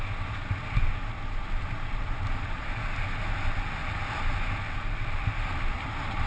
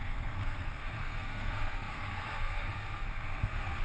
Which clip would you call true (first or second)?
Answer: first